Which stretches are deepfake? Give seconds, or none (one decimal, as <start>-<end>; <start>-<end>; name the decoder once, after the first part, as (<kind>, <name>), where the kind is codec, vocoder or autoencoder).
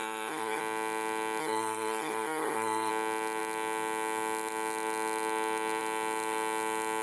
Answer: 0.0-0.6 (codec, SNAC); 1.4-2.9